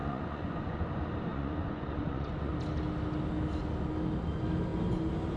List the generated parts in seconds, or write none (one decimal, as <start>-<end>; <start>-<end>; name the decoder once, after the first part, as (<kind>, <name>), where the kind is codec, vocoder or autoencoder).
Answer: 0.0-0.8 (vocoder, Vocos); 1.3-2.5

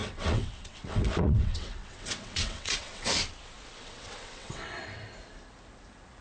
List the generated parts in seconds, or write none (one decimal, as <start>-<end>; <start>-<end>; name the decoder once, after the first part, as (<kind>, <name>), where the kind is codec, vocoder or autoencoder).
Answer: 0.0-3.1 (vocoder, WaveNeXt); 3.8-5.0

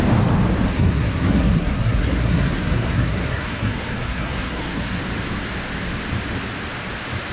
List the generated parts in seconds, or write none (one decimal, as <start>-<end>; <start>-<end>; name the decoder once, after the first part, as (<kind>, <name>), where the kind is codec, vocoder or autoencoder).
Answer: 0.7-5.0 (codec, SNAC)

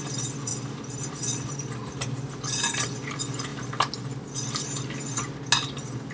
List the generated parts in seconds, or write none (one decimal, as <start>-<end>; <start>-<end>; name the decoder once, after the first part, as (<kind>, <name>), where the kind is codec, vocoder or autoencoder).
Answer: none